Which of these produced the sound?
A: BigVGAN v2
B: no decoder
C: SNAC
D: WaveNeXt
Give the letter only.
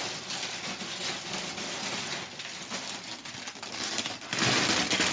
B